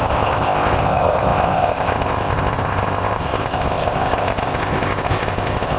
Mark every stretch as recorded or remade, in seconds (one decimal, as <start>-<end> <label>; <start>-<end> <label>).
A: 0.0-5.8 remade